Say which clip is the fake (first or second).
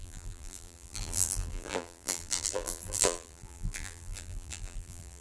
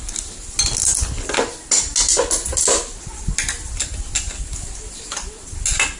first